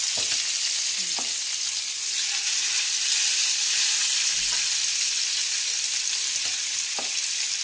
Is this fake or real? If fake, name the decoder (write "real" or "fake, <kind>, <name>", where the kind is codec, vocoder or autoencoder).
real